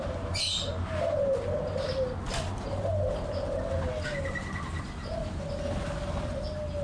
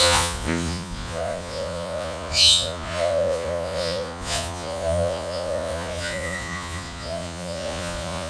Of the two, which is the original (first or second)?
first